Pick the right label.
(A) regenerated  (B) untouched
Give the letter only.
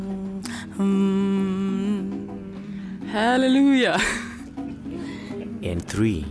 B